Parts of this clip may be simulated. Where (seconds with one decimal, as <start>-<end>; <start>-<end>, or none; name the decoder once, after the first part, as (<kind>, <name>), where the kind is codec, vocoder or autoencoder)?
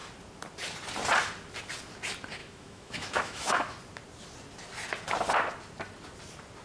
2.4-3.8 (autoencoder, DAC-VAE)